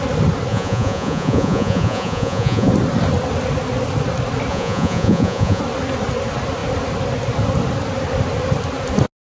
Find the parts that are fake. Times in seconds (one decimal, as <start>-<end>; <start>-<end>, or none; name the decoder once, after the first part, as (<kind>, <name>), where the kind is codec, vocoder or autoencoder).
0.5-2.7 (vocoder, Vocos); 4.5-5.6